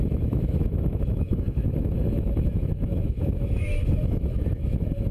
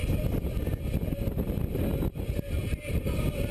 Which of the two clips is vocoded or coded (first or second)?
first